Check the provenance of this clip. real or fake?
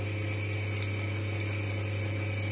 real